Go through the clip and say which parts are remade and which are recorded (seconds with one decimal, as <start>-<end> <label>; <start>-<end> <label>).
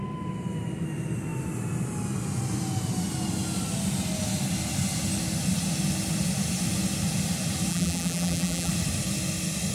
0.0-7.7 recorded; 7.7-8.7 remade; 8.7-9.7 recorded